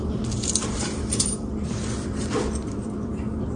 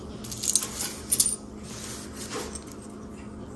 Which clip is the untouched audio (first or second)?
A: second